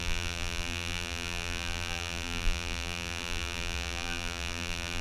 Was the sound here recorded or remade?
remade